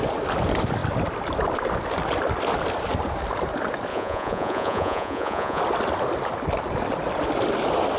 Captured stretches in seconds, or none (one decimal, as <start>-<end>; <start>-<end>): 0.0-3.9; 5.6-8.0